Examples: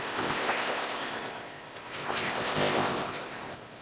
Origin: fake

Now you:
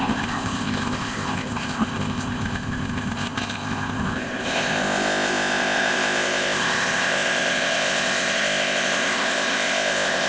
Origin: fake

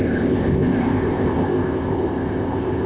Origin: fake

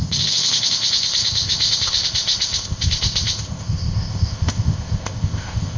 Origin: fake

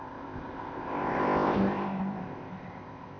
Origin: fake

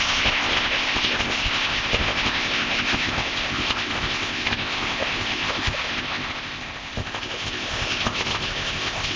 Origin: fake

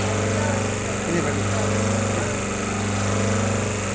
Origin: real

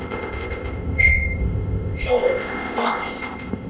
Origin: fake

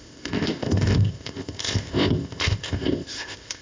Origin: fake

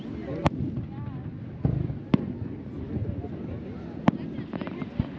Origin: real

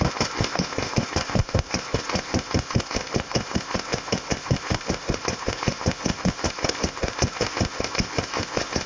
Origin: fake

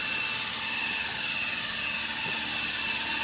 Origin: real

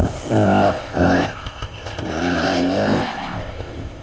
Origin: fake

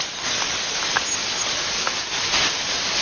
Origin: real